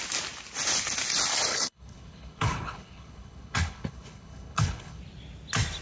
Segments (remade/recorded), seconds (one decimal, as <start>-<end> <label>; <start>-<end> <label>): 0.0-1.5 recorded; 1.5-5.0 remade; 5.0-5.8 recorded